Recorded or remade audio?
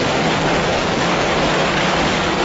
remade